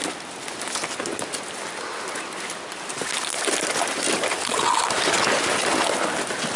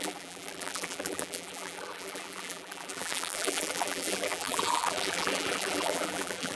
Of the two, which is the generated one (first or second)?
second